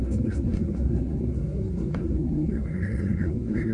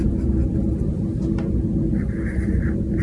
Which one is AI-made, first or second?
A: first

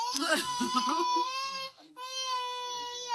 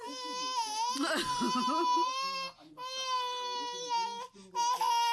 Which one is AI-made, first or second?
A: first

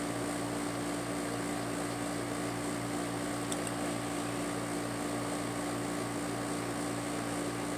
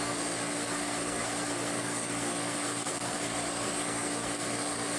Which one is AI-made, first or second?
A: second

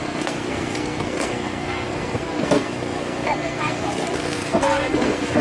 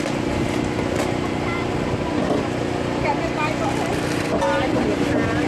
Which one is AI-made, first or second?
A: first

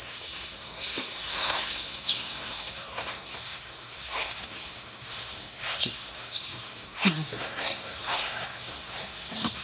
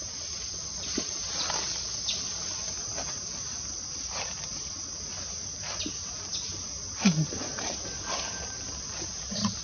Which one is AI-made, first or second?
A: first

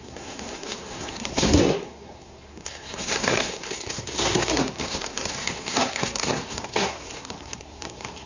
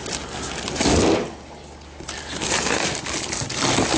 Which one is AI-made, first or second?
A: first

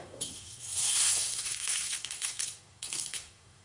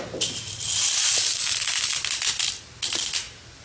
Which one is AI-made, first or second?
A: first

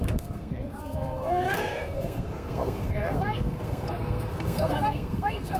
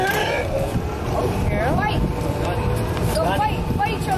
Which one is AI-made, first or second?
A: first